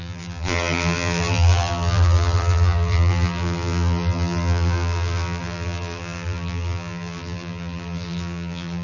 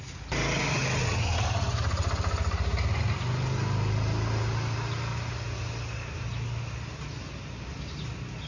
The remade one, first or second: first